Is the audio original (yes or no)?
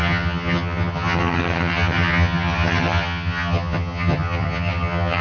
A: no